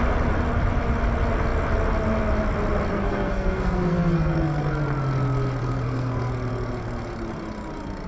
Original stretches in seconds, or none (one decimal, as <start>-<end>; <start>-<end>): 0.0-2.9; 4.8-5.6; 6.3-8.1